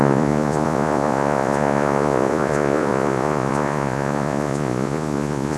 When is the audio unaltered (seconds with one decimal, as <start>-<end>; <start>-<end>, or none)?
none